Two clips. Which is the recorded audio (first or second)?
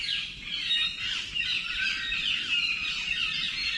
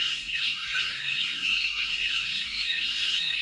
first